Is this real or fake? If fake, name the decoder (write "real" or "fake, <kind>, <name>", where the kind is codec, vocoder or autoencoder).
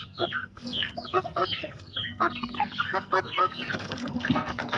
fake, codec, SNAC